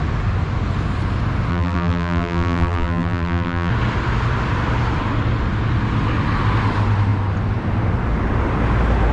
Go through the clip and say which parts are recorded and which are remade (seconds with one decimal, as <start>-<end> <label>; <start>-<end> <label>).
0.0-1.5 recorded; 1.5-3.7 remade; 3.7-9.1 recorded